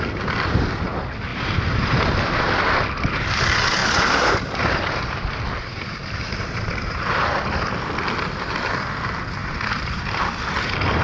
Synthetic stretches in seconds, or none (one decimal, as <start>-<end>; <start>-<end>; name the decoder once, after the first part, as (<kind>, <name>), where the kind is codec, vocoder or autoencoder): 1.3-2.0 (vocoder, BigVGAN v2); 3.8-7.7; 9.4-10.2